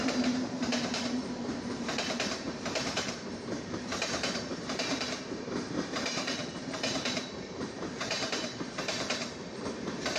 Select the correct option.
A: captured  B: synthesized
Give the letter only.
B